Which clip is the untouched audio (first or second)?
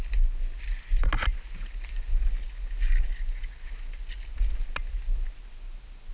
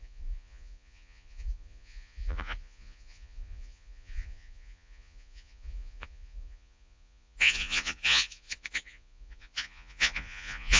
first